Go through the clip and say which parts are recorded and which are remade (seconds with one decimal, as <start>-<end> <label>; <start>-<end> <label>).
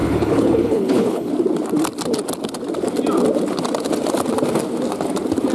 0.0-1.3 remade; 1.3-5.5 recorded